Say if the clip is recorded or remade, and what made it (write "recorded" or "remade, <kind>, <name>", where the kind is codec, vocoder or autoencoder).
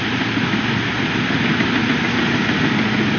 recorded